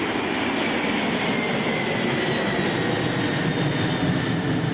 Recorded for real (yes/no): yes